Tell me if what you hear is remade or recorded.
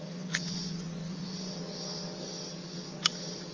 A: remade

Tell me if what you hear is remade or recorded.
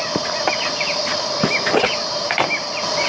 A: recorded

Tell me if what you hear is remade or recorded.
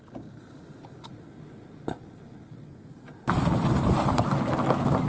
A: recorded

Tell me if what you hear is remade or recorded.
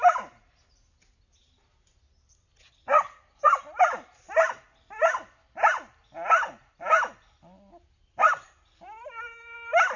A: recorded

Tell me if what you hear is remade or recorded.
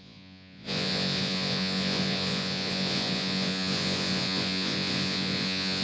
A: remade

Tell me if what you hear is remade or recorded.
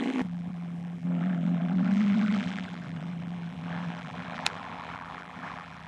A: remade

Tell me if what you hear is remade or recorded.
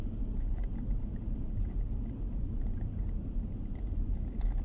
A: remade